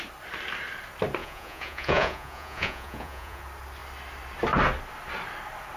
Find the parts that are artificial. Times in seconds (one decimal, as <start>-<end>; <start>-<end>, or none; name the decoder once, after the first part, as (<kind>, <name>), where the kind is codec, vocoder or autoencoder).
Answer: 1.2-3.4 (vocoder, Vocos)